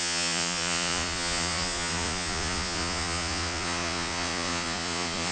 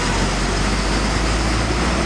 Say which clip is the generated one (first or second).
first